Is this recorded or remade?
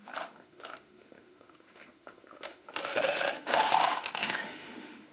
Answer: remade